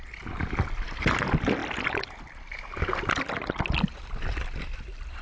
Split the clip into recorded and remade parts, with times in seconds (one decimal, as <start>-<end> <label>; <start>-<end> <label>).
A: 0.0-5.2 recorded